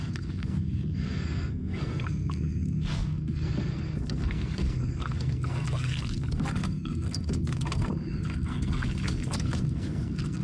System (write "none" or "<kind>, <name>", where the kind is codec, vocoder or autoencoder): codec, SNAC